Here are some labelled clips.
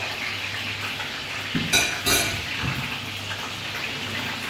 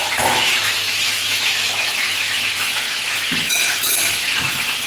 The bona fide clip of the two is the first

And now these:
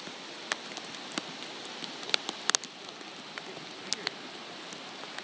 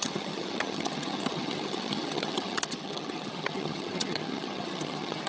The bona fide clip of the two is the first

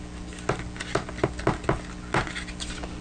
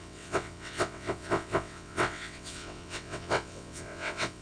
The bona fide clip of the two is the first